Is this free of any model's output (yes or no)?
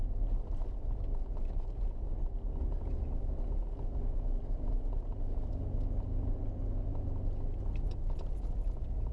yes